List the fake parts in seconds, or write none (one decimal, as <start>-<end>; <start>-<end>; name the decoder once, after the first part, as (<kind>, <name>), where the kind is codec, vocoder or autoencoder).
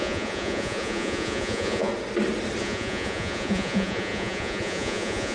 0.0-1.9 (vocoder, Vocos); 2.6-5.3